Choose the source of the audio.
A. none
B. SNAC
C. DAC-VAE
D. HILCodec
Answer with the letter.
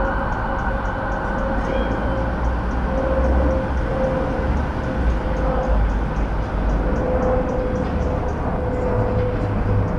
A